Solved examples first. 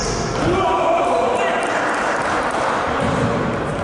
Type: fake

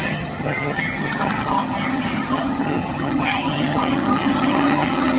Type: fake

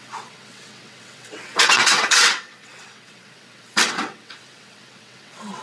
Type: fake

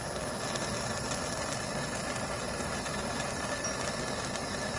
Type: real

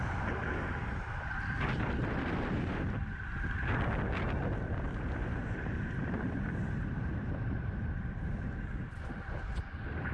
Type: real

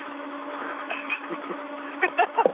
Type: fake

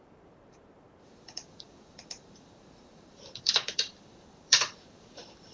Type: fake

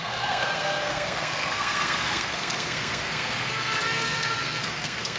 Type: fake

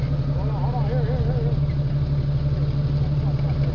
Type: real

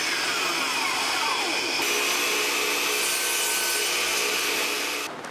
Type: real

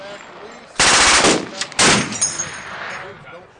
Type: real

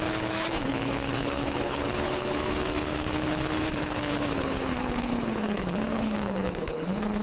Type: fake